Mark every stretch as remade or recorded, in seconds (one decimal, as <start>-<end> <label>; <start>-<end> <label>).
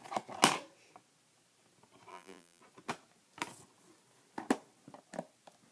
0.0-2.1 recorded; 2.1-2.6 remade; 2.6-5.7 recorded